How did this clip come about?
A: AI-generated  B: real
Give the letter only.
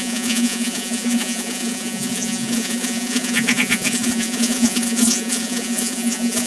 A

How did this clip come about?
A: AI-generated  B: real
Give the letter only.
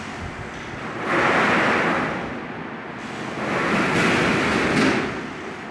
B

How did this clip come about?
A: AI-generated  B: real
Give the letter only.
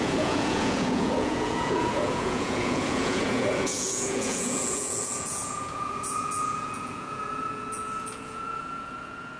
A